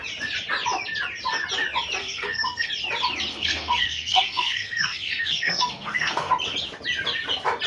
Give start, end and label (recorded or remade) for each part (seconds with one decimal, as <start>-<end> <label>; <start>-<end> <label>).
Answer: 0.0-2.0 recorded; 2.0-2.7 remade; 2.7-3.3 recorded; 3.3-6.3 remade; 6.3-7.7 recorded